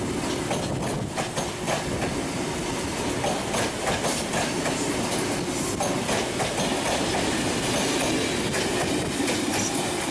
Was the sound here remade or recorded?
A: recorded